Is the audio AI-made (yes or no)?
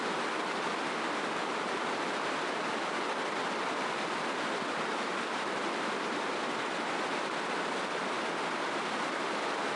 yes